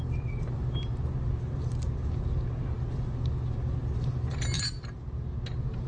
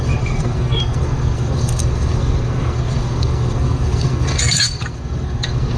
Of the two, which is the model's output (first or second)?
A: second